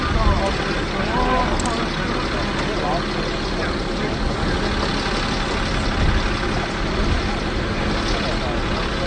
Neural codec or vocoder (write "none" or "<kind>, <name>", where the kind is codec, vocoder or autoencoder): none